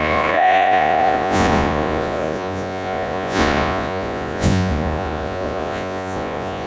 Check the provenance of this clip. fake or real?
fake